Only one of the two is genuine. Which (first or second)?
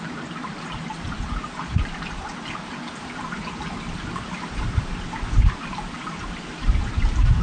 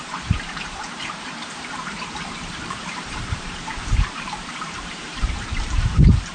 first